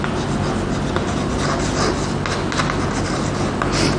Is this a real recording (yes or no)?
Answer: yes